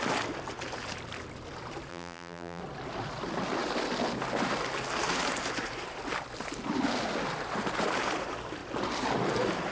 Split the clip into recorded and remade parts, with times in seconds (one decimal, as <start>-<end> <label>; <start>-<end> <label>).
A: 0.0-1.9 recorded; 1.9-2.6 remade; 2.6-9.7 recorded